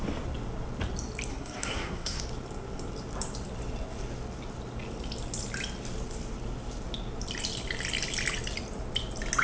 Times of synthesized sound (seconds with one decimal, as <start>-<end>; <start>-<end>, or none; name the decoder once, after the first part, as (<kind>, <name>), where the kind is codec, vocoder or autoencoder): 1.3-2.2 (codec, SNAC)